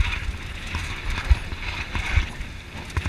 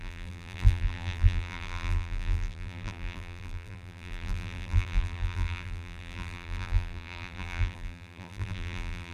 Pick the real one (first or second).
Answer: first